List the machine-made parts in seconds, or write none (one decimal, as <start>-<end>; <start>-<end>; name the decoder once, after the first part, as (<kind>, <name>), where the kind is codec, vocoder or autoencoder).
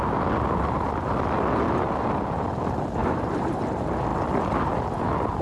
3.0-3.6 (vocoder, BigVGAN v2)